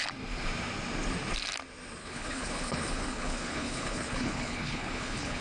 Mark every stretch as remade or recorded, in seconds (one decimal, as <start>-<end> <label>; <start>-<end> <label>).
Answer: 0.0-2.0 recorded; 2.0-5.4 remade

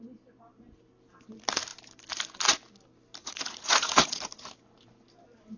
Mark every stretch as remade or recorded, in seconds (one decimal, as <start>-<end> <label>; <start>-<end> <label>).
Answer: 0.0-3.2 recorded; 3.2-4.2 remade; 4.2-5.6 recorded

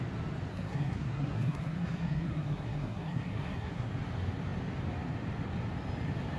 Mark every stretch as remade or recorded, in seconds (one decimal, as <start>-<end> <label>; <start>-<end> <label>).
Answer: 0.0-0.5 recorded; 0.5-3.9 remade; 3.9-6.4 recorded

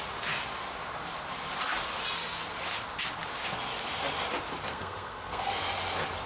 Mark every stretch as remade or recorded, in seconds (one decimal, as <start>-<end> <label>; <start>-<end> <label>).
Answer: 0.0-4.7 recorded; 4.7-5.5 remade; 5.5-6.3 recorded

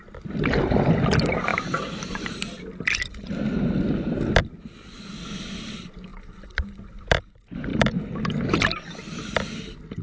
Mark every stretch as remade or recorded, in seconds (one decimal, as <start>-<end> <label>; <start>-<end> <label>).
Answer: 0.0-1.5 recorded; 1.5-2.5 remade; 2.5-6.1 recorded; 6.1-7.1 remade; 7.1-7.7 recorded; 7.7-8.8 remade; 8.8-10.0 recorded

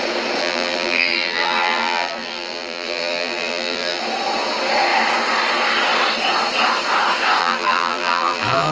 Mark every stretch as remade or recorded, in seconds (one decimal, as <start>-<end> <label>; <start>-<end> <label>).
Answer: 0.0-0.4 recorded; 0.4-4.0 remade; 4.0-7.4 recorded; 7.4-8.7 remade